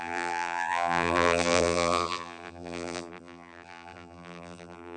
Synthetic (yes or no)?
yes